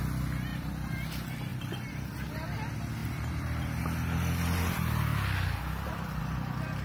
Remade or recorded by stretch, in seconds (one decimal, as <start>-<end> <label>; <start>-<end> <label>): 0.0-0.5 recorded; 0.5-1.1 remade; 1.1-1.5 recorded; 1.5-2.1 remade; 2.1-3.0 recorded; 3.0-3.8 remade; 3.8-6.8 recorded